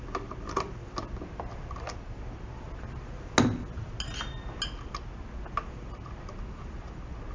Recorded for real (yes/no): yes